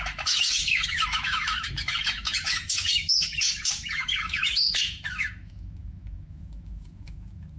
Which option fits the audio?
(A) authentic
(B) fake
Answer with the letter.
B